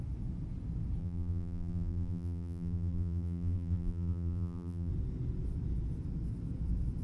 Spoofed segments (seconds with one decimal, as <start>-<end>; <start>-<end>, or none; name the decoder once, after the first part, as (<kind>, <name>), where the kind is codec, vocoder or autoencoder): 1.0-4.9 (vocoder, BigVGAN v2)